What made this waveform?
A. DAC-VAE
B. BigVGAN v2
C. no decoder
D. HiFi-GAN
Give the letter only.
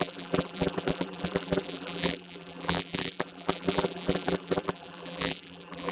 B